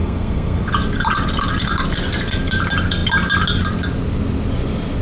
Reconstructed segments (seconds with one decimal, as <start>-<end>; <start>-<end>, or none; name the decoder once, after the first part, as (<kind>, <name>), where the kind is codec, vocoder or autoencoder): 0.0-0.7 (codec, SNAC)